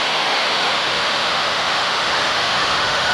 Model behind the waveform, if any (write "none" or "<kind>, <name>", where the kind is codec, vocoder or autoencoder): autoencoder, DAC-VAE